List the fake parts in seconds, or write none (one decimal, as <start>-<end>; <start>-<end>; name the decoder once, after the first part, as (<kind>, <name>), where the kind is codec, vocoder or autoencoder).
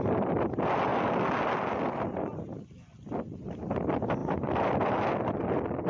none